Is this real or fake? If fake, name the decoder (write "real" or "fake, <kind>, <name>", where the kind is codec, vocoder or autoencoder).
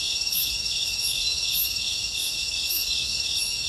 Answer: fake, autoencoder, DAC-VAE